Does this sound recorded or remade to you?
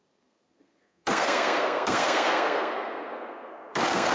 remade